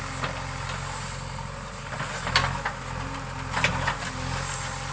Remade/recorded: recorded